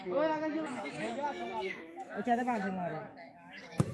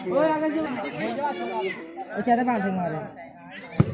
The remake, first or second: first